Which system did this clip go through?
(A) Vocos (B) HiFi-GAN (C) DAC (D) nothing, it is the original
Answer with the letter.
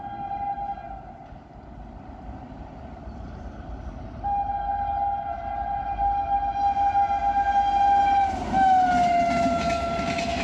D